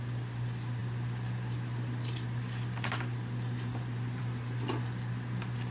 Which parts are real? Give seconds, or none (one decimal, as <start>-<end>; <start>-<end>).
0.0-5.7